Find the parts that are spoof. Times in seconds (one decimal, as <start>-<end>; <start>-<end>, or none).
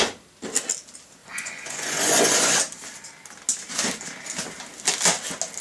1.2-2.6